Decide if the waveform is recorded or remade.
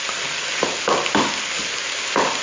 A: recorded